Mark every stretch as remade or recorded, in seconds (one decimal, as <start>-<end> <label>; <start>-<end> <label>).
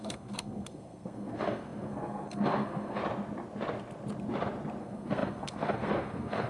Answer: 0.0-3.0 remade; 3.0-4.8 recorded; 4.8-6.5 remade